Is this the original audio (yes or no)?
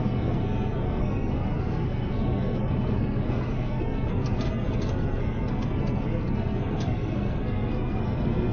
no